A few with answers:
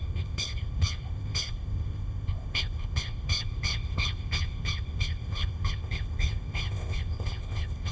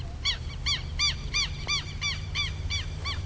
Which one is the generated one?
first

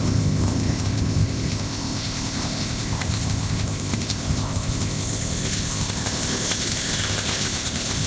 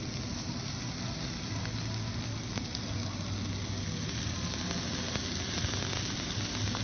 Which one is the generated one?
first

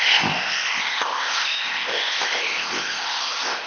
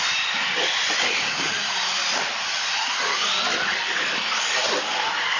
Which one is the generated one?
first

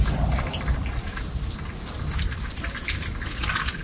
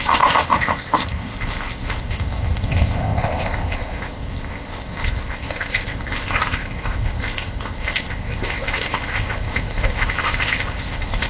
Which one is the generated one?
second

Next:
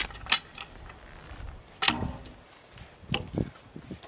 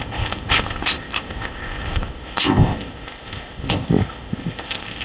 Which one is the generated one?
second